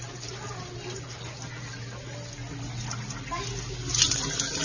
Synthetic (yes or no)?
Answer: no